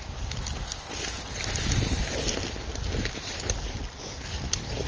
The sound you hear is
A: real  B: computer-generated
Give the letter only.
A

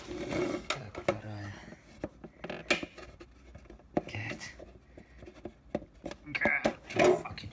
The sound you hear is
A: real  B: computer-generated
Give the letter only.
A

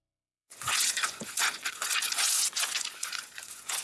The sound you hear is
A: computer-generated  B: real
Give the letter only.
A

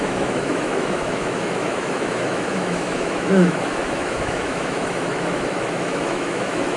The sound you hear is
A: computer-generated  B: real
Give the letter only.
A